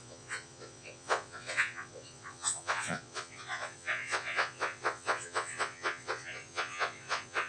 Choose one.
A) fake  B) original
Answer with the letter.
A